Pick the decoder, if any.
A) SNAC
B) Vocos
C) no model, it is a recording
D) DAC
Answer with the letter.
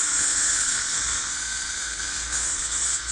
A